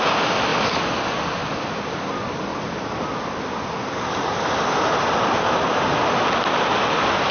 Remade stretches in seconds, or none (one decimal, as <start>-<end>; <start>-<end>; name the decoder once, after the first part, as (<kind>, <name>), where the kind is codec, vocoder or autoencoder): none